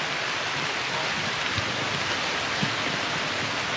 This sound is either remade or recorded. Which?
recorded